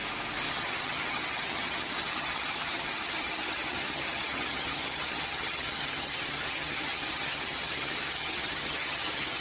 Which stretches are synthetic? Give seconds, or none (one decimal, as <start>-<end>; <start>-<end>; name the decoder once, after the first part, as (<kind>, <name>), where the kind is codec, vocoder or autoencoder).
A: 0.5-9.4 (vocoder, HiFi-GAN)